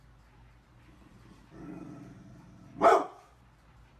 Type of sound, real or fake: real